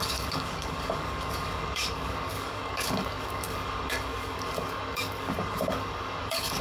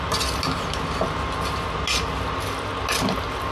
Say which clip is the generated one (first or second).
first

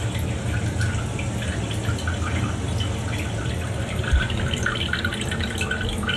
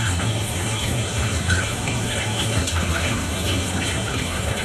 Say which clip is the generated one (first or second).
second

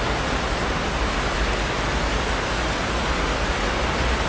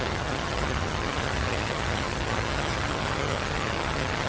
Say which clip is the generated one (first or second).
second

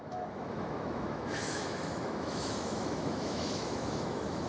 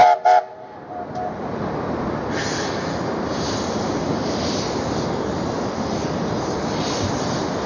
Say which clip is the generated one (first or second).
first